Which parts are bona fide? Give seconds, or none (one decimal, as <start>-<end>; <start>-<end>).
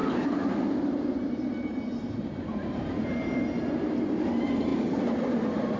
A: 4.7-5.8